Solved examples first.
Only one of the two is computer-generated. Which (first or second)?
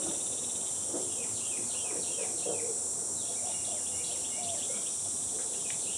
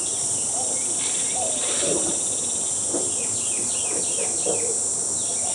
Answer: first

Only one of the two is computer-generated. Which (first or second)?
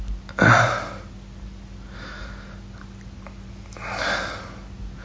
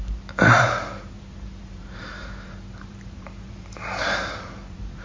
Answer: second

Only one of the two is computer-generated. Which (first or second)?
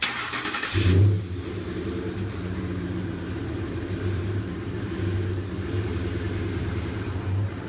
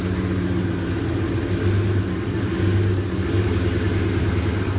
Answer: first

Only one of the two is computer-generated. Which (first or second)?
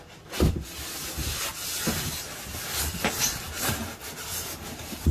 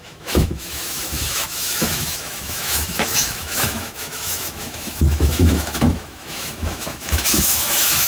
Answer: second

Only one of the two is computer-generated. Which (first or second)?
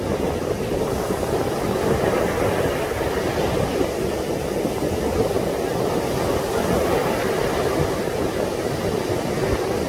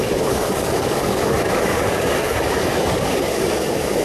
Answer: second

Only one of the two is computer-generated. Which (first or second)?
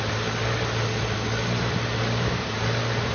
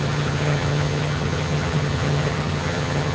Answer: second